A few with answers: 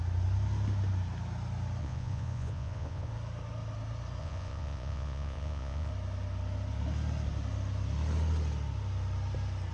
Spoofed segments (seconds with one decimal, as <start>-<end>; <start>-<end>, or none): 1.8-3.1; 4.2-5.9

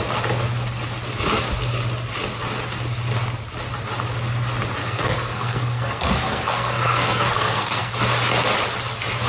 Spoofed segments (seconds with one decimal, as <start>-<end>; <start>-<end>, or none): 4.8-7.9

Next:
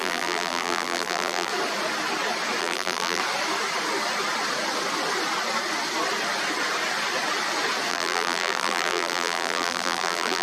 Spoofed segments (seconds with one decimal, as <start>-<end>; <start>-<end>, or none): 0.0-1.5; 2.6-3.2; 7.9-10.4